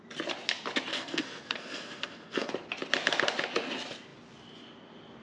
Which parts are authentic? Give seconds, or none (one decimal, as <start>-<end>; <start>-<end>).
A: 0.0-0.9; 2.5-5.2